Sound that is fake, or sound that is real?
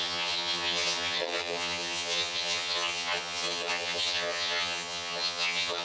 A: fake